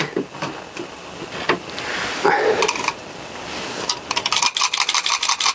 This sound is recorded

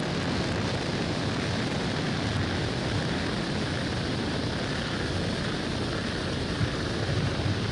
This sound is recorded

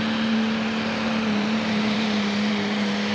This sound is remade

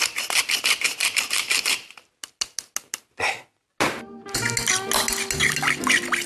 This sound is recorded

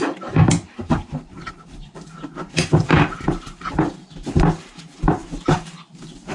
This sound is remade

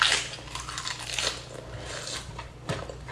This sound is remade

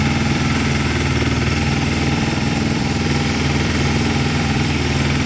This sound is remade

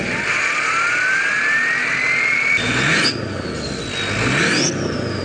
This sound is recorded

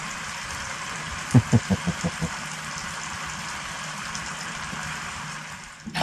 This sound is remade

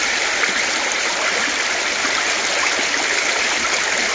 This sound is recorded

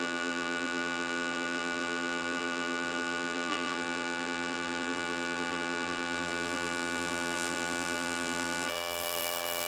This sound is remade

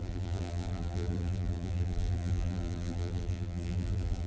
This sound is remade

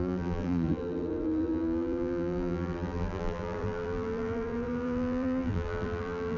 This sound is remade